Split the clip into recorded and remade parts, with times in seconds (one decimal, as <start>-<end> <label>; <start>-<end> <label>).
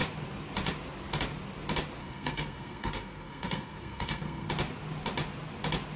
0.0-2.0 recorded; 2.0-4.5 remade; 4.5-6.0 recorded